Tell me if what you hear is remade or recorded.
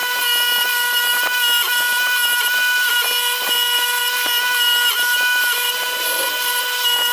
recorded